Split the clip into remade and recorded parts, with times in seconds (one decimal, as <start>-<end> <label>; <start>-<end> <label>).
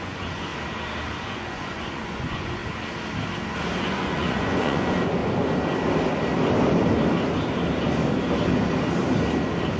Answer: 0.0-0.5 remade; 0.5-1.2 recorded; 1.2-2.6 remade; 2.6-3.8 recorded; 3.8-5.2 remade; 5.2-9.8 recorded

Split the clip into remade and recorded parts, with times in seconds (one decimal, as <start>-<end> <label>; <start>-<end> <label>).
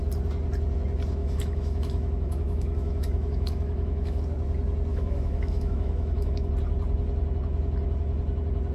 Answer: 0.0-1.2 recorded; 1.2-4.2 remade; 4.2-4.9 recorded; 4.9-6.5 remade; 6.5-8.7 recorded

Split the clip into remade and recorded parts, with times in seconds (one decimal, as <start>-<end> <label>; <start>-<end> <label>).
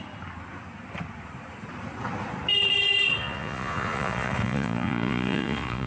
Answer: 0.0-3.2 recorded; 3.2-5.9 remade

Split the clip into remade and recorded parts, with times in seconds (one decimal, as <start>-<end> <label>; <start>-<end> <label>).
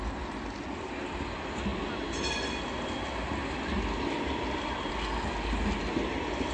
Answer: 0.0-6.5 recorded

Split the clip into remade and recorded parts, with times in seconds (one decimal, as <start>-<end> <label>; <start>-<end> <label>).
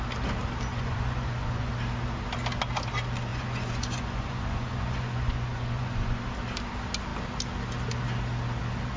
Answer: 0.0-0.7 recorded; 0.7-1.7 remade; 1.7-3.3 recorded; 3.3-6.2 remade; 6.2-9.0 recorded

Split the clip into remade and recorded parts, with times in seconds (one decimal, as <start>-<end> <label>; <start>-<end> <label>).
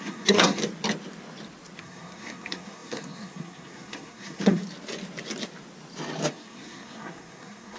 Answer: 0.0-0.6 remade; 0.6-1.8 recorded; 1.8-4.6 remade; 4.6-6.3 recorded; 6.3-7.8 remade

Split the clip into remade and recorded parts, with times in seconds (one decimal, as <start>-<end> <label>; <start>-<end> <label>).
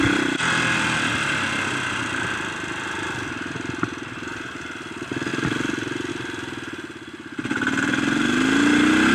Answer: 0.0-9.1 recorded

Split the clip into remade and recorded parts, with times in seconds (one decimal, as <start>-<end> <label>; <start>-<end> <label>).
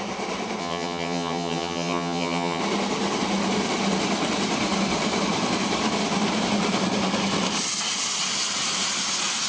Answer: 0.0-0.6 recorded; 0.6-2.6 remade; 2.6-9.5 recorded